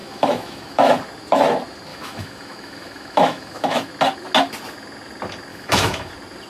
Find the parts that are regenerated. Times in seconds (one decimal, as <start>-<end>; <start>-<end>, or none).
0.0-0.9; 1.9-3.9; 5.5-6.1